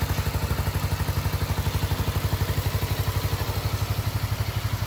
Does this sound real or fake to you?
real